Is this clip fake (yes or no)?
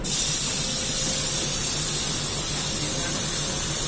no